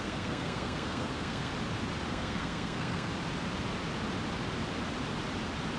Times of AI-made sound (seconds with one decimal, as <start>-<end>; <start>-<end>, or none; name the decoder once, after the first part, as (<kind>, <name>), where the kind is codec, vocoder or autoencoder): 0.0-1.5 (codec, SNAC); 2.1-3.1